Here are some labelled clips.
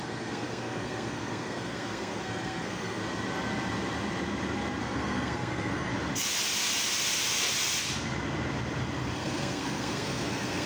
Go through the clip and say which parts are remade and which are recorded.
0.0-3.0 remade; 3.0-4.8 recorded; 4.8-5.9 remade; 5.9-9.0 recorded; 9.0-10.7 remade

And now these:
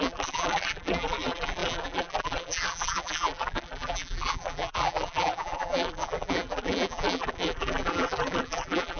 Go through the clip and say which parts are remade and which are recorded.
0.0-9.0 remade

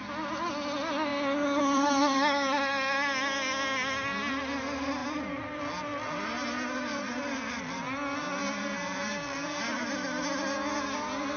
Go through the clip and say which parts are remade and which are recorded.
0.0-11.4 recorded

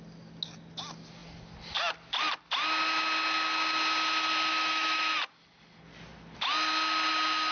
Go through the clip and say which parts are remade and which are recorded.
0.0-4.5 recorded; 4.5-5.1 remade; 5.1-7.5 recorded